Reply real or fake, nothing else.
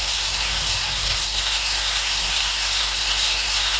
fake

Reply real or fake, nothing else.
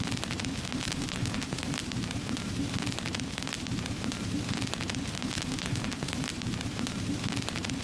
fake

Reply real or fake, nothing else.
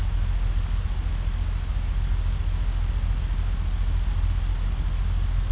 real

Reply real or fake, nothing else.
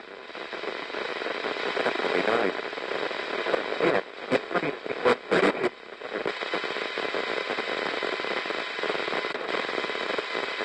real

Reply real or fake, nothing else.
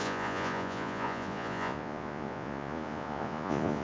fake